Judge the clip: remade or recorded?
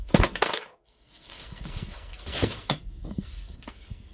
remade